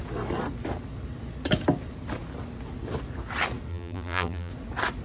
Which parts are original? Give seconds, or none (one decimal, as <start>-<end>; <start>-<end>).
0.0-3.7; 4.5-5.0